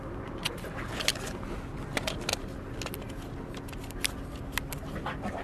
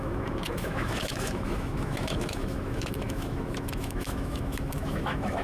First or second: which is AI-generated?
second